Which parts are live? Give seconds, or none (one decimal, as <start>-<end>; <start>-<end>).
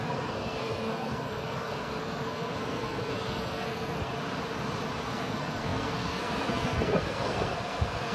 4.1-5.0